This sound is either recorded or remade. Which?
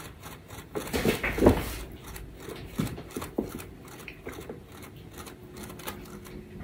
recorded